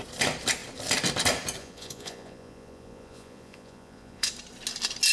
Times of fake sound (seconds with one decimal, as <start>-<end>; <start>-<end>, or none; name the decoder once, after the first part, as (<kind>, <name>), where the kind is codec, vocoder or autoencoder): 1.6-4.3 (vocoder, Vocos)